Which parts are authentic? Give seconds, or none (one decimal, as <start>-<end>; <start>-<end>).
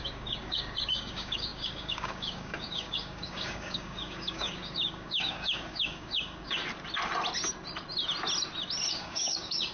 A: 6.6-8.9